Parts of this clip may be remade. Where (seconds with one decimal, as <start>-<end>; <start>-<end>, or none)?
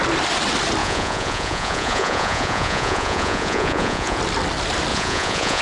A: 0.8-4.2; 4.9-5.6